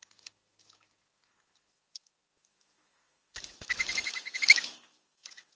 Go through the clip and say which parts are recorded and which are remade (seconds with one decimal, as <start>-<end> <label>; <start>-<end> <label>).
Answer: 0.0-5.6 remade